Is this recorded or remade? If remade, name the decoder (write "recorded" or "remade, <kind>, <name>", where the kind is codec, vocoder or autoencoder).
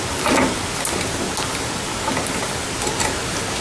recorded